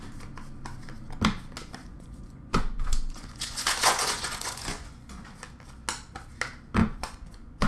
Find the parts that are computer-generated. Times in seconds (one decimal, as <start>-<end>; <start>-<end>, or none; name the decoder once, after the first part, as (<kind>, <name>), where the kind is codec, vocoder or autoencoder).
1.8-5.2 (vocoder, Vocos); 6.8-7.7